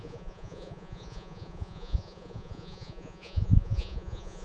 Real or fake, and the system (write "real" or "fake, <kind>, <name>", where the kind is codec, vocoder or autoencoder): fake, vocoder, Vocos